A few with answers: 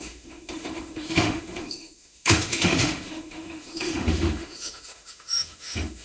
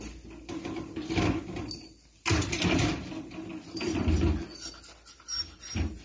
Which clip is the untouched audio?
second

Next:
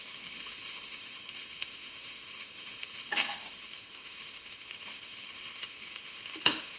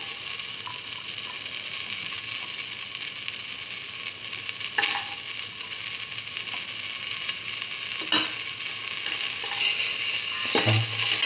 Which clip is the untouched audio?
second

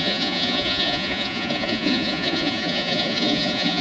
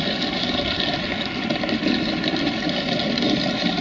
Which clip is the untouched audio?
second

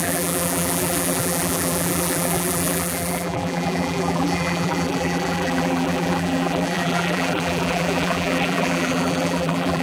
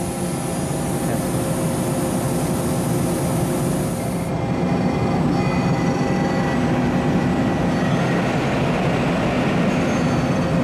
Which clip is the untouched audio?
second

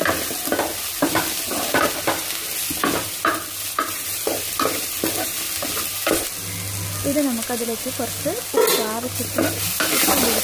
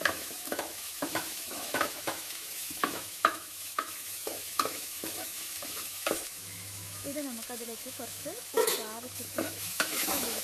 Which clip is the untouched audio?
first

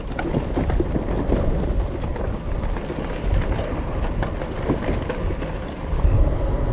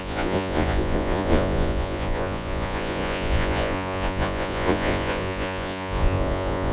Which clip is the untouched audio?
first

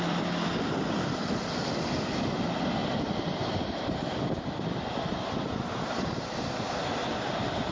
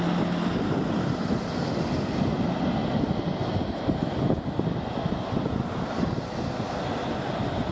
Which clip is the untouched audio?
second